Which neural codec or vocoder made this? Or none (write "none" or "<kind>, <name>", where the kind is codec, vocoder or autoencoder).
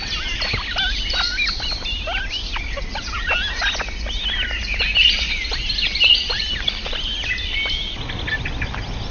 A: none